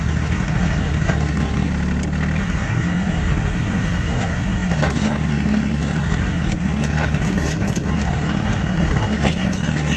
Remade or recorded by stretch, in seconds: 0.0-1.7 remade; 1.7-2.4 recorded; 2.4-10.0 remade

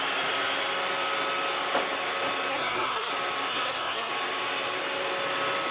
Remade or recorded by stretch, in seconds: 0.0-2.5 recorded; 2.5-3.1 remade; 3.1-3.5 recorded; 3.5-4.1 remade; 4.1-5.7 recorded